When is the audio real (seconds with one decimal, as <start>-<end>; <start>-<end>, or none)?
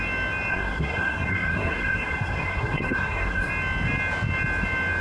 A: 0.0-0.5; 3.5-5.0